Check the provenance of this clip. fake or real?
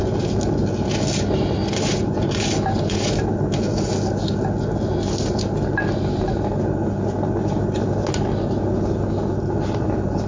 real